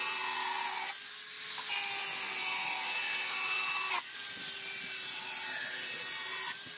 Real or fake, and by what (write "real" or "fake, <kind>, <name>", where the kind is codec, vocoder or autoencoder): real